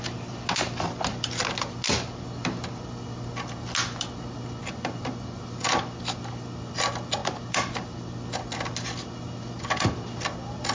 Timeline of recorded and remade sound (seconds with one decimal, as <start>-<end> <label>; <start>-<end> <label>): 0.0-10.7 recorded

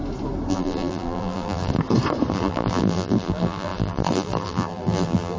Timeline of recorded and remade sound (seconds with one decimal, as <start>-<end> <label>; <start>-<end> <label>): 0.0-0.5 recorded; 0.5-1.7 remade; 1.7-2.3 recorded; 2.3-5.4 remade

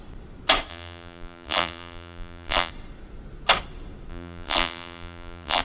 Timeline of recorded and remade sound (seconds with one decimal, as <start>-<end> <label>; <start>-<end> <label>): 0.0-0.7 recorded; 0.7-2.7 remade; 2.7-4.1 recorded; 4.1-5.6 remade

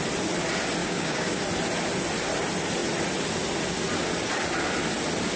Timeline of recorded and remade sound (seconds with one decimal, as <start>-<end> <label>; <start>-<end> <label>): 0.0-0.8 recorded; 0.8-1.4 remade; 1.4-5.4 recorded